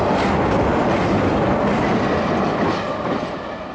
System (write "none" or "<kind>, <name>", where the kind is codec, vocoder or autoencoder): none